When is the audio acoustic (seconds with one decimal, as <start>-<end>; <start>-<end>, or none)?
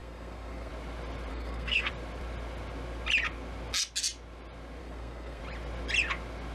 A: 0.7-1.3; 1.9-4.8; 5.4-6.5